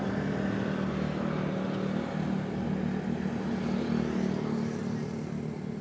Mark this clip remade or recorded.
recorded